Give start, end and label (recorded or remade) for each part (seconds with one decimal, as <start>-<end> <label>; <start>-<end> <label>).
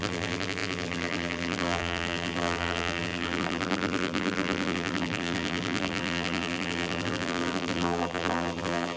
0.0-9.0 remade